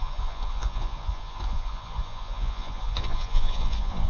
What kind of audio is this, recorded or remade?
remade